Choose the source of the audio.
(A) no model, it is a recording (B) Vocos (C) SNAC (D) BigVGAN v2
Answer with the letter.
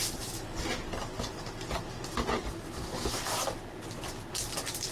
A